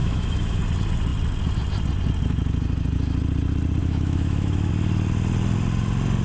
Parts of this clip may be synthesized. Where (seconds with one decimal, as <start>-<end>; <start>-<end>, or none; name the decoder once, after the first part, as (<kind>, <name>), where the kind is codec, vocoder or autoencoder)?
0.0-0.6 (autoencoder, DAC-VAE); 3.8-4.7